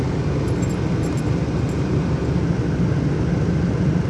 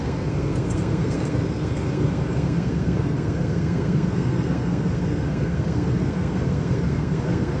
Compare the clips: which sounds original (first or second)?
first